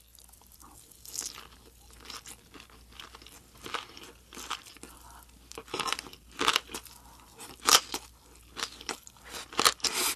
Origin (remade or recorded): recorded